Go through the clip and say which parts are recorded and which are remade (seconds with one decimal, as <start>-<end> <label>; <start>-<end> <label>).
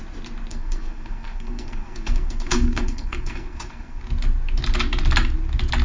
0.0-0.5 recorded; 0.5-4.0 remade; 4.0-5.8 recorded